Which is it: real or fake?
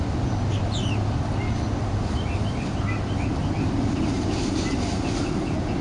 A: real